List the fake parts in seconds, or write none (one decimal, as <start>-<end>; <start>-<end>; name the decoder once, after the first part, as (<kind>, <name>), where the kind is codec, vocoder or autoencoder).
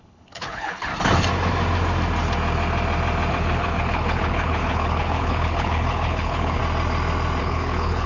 0.0-0.9 (codec, HILCodec); 3.3-6.6; 7.4-8.1